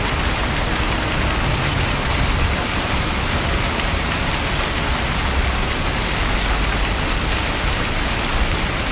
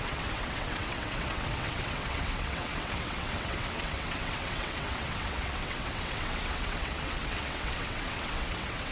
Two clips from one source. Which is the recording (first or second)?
first